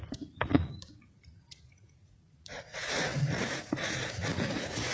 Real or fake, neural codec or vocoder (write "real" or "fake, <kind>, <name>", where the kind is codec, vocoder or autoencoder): fake, vocoder, Vocos